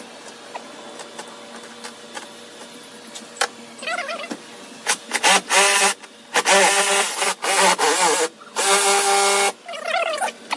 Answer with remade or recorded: recorded